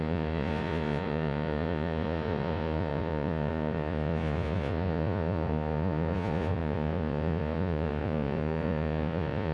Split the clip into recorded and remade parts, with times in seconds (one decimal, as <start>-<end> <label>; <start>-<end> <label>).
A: 0.0-9.5 remade